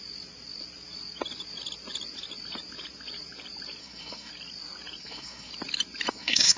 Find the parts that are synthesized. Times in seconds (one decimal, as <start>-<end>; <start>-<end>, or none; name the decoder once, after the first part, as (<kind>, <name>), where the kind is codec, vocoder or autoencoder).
3.8-4.3 (codec, SNAC); 5.0-5.5; 6.1-6.6